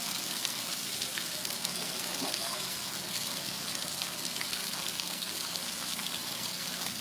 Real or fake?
fake